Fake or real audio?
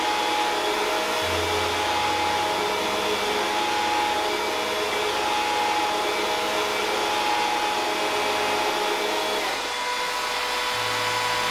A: real